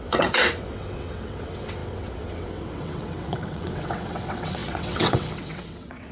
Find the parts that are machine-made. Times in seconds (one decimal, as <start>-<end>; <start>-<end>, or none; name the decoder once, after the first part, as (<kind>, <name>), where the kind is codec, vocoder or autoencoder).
0.0-6.1 (vocoder, WaveNeXt)